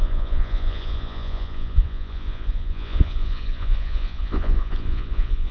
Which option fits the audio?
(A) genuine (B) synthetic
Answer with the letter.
B